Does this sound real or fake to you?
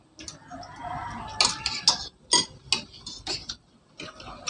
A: real